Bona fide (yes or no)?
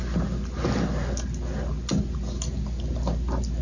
yes